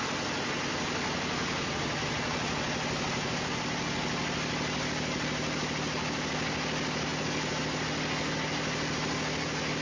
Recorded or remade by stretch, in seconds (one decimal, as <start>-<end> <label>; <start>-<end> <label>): 0.0-9.8 recorded